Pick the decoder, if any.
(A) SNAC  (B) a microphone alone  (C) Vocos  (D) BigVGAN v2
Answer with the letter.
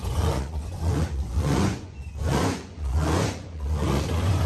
C